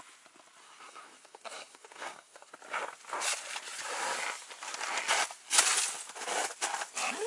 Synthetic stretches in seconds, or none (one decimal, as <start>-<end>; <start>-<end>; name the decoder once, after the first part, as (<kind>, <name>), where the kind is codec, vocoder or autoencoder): 0.6-2.5 (codec, SNAC)